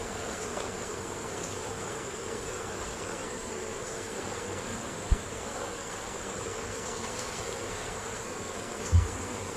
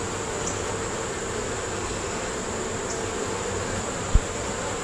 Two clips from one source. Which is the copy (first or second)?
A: first